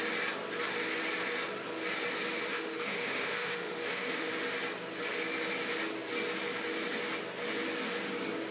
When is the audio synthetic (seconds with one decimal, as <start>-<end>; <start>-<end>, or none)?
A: 2.5-4.3